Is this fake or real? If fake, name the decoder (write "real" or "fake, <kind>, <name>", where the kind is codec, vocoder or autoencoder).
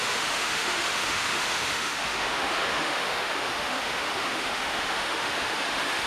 fake, autoencoder, DAC-VAE